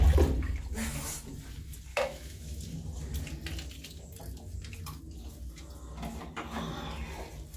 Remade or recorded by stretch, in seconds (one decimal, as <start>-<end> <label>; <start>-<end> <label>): 0.0-1.9 recorded; 1.9-2.6 remade; 2.6-7.6 recorded